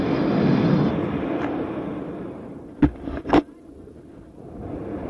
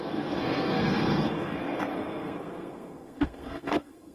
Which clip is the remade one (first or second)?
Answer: second